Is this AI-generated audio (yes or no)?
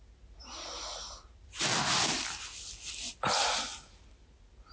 no